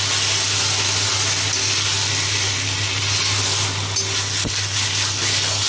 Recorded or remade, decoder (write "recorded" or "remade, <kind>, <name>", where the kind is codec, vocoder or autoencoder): recorded